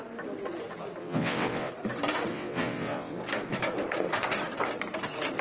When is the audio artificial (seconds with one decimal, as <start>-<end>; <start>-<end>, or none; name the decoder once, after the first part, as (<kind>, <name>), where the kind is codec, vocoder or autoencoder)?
1.0-1.7 (vocoder, WaveNeXt); 2.3-3.2